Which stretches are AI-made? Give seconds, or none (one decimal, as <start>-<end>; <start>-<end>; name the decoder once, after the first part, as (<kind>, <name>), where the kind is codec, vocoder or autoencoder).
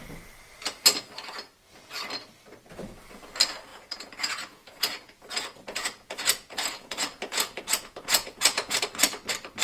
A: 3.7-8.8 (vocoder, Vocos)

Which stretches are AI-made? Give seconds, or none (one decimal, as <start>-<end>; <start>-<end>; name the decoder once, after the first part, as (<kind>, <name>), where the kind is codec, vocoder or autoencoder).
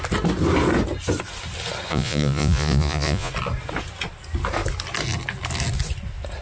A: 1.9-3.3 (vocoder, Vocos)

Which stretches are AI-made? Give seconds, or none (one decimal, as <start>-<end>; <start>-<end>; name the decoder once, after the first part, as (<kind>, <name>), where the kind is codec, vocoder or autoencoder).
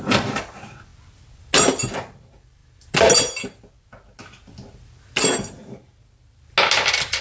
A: none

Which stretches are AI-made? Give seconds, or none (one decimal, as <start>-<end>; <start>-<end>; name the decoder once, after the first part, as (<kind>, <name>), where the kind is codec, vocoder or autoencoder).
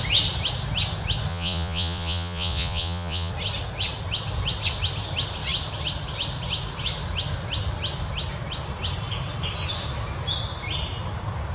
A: 1.3-3.3 (vocoder, Vocos)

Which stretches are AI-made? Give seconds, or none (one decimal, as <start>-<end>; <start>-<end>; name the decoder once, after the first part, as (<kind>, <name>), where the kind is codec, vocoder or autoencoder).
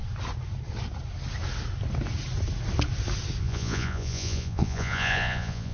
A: 3.4-5.7 (vocoder, Vocos)